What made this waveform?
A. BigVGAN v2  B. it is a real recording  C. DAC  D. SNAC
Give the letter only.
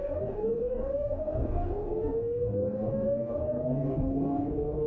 C